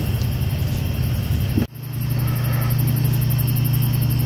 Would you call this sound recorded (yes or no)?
yes